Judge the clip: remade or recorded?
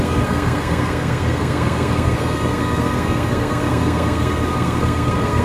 remade